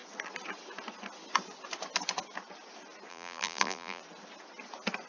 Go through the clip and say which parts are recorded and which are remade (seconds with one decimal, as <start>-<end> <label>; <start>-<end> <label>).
0.0-3.1 recorded; 3.1-4.0 remade; 4.0-5.1 recorded